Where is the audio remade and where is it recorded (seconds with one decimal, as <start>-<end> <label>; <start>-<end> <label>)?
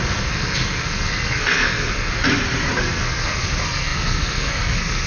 0.0-2.1 remade; 2.1-2.8 recorded; 2.8-5.1 remade